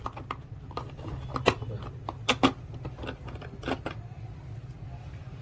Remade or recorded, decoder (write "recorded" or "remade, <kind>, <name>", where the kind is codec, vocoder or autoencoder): recorded